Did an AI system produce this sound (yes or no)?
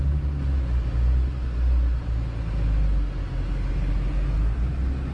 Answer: no